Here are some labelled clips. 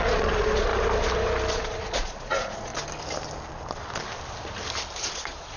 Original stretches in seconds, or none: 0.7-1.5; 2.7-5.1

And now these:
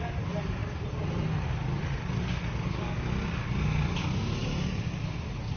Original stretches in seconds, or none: 0.0-5.6

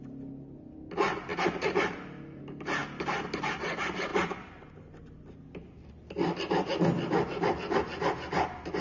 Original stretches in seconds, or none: 0.0-8.8

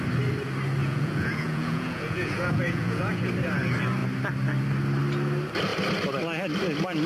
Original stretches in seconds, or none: 0.0-0.8; 3.2-7.1